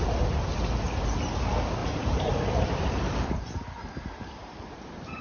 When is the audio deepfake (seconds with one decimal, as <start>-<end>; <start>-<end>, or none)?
1.8-5.2